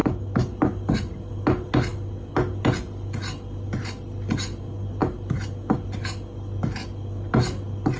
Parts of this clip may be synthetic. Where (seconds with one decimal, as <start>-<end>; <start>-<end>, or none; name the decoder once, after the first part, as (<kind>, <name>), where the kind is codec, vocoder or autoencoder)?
none